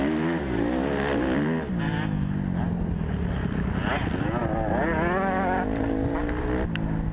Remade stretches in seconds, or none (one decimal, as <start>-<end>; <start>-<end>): none